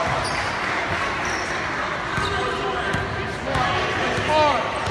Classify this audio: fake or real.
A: real